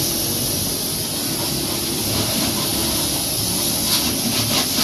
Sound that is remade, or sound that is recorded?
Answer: recorded